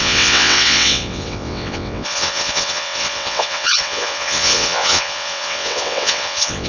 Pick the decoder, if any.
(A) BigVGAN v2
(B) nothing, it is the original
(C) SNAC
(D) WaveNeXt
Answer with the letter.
D